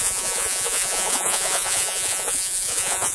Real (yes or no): no